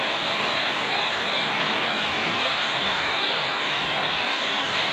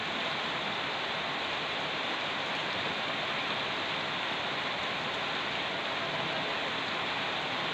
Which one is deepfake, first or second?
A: first